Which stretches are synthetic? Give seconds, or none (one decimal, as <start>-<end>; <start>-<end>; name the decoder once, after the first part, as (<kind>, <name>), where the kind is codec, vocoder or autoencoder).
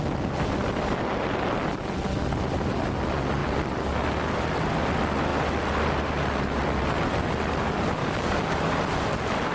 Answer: 8.0-8.8 (codec, DAC)